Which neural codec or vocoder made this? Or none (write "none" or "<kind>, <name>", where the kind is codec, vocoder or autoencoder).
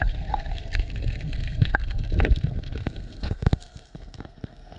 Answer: codec, SNAC